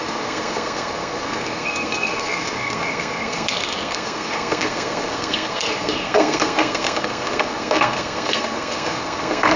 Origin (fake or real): fake